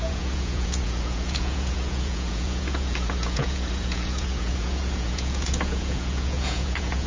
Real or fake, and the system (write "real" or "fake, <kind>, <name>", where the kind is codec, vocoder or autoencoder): fake, vocoder, Vocos